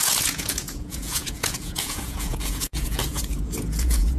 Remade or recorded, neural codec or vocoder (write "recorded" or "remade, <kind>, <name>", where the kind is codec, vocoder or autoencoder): remade, vocoder, Vocos